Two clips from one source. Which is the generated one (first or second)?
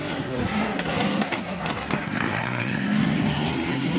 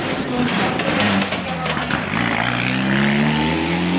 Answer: first